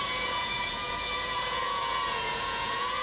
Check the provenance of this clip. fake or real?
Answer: fake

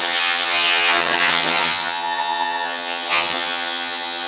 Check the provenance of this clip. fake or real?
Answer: fake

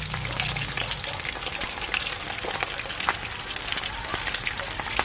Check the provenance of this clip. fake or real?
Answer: real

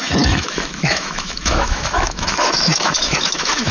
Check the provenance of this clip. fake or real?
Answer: fake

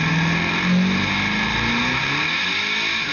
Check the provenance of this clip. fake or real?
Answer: real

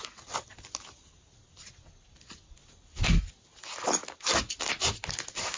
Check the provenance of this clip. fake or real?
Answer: real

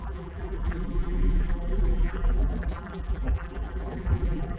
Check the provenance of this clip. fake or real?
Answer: fake